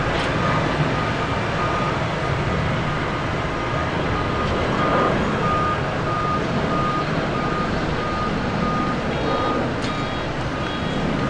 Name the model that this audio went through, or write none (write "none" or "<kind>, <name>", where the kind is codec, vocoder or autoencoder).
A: none